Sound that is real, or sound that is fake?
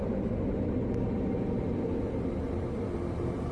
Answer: real